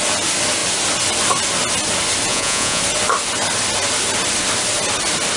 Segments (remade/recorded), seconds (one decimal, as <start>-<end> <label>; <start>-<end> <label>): 0.0-2.3 recorded; 2.3-2.8 remade; 2.8-5.4 recorded

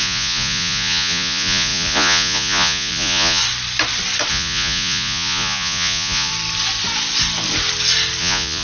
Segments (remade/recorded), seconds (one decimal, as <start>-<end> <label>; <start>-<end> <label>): 0.0-3.4 remade; 3.4-4.3 recorded; 4.3-6.3 remade; 6.3-8.2 recorded; 8.2-8.6 remade

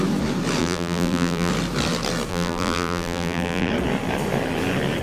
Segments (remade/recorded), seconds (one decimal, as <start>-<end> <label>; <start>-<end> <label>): 0.0-0.6 recorded; 0.6-1.5 remade; 1.5-2.3 recorded; 2.3-3.7 remade; 3.7-5.0 recorded

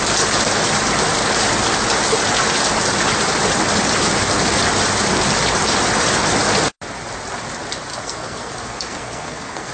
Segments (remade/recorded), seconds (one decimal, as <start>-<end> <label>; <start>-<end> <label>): 0.0-7.9 recorded; 7.9-9.7 remade

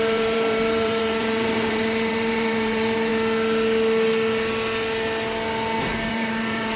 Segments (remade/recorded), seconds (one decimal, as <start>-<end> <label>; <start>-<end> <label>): 0.0-3.1 remade; 3.1-6.1 recorded; 6.1-6.8 remade